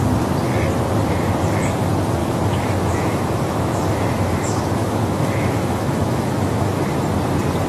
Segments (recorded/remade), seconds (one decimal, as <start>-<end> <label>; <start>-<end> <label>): 0.0-2.2 recorded; 2.2-6.8 remade; 6.8-7.7 recorded